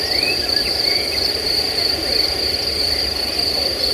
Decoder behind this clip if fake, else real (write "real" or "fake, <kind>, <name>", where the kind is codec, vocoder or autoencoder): real